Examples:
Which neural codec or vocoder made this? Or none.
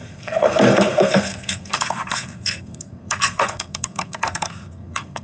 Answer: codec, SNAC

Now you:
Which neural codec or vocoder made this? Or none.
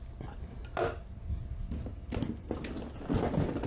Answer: none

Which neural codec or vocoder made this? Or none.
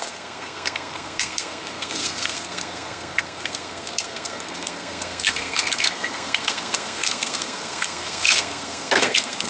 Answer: codec, SNAC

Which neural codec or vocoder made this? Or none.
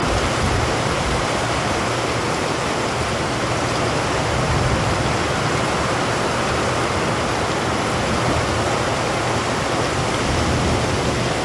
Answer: none